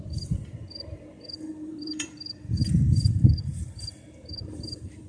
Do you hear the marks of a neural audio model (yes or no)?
yes